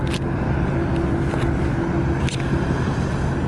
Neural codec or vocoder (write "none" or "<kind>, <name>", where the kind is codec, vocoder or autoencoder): none